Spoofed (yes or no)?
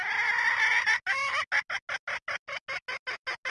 no